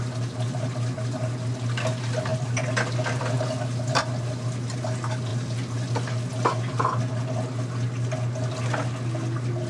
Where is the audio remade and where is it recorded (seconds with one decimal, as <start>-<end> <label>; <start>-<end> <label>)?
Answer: 0.0-9.7 recorded